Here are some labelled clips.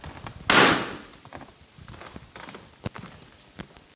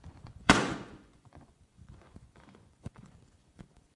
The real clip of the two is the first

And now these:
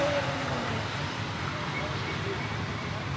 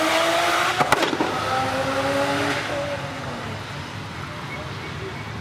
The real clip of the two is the second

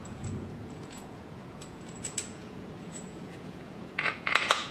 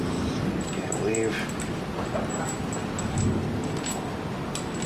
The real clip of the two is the second